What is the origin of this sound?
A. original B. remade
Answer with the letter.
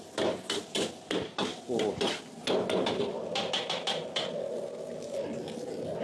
A